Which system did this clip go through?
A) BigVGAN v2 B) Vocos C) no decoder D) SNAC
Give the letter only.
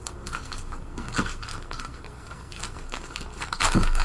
D